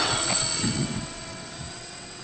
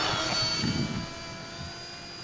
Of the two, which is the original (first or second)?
second